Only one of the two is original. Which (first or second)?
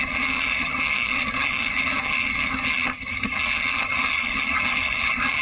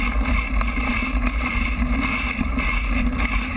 second